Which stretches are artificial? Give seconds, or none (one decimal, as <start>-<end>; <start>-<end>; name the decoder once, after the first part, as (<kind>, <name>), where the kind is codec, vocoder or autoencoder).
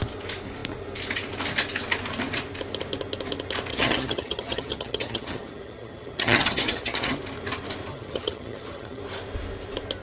3.7-7.2 (vocoder, HiFi-GAN); 7.9-9.0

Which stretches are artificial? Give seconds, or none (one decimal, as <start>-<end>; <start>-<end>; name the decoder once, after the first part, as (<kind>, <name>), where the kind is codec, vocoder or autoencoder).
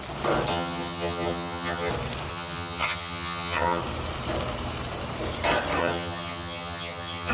0.5-1.9 (vocoder, HiFi-GAN); 2.3-3.8; 5.8-7.3